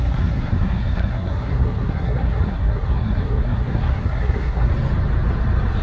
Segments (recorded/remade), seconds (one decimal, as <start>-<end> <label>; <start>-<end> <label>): 0.0-4.7 remade; 4.7-5.8 recorded